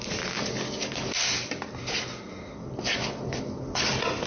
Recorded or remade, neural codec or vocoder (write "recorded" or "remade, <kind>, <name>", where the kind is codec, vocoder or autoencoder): recorded